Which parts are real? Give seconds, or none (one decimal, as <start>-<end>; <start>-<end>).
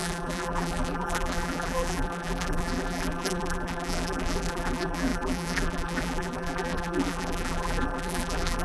none